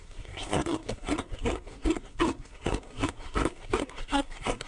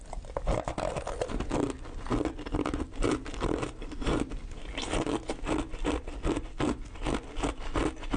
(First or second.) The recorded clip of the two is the second